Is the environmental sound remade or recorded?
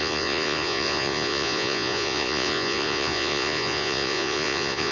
remade